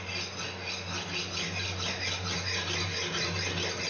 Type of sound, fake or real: real